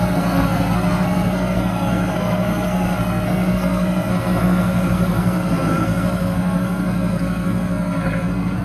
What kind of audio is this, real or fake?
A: fake